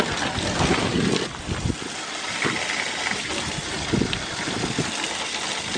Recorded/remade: recorded